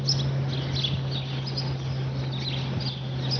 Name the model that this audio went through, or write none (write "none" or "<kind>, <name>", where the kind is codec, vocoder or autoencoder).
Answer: none